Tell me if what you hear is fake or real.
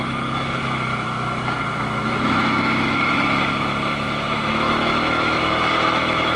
fake